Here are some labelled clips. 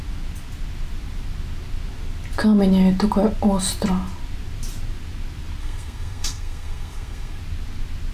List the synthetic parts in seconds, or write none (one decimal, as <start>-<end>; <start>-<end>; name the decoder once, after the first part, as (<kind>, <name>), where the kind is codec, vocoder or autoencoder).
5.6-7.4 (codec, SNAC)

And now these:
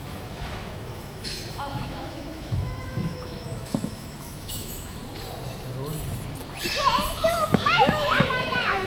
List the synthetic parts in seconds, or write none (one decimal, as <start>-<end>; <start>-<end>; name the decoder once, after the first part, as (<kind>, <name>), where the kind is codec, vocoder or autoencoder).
0.0-5.0 (autoencoder, DAC-VAE); 7.1-8.9

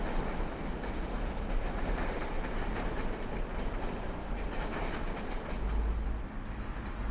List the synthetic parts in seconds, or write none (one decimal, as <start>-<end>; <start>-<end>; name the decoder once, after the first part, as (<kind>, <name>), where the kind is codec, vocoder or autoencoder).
none